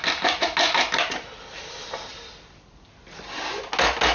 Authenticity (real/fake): real